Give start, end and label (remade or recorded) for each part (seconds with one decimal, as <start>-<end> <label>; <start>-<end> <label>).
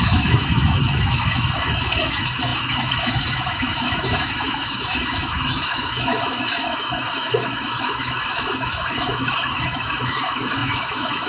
0.0-11.3 remade